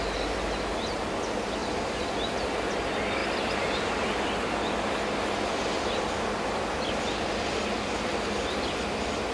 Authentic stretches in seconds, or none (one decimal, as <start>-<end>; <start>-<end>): 0.0-1.6; 2.5-9.3